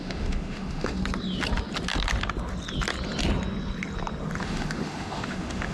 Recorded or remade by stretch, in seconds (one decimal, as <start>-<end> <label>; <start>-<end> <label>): 0.0-1.0 remade; 1.0-4.4 recorded; 4.4-5.7 remade